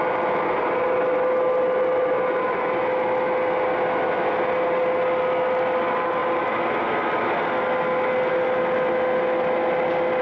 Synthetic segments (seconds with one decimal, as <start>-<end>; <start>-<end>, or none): none